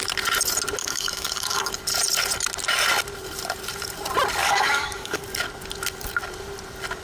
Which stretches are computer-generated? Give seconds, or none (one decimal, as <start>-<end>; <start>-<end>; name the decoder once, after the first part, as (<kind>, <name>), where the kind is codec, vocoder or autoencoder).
0.8-1.7 (codec, DAC); 4.4-5.2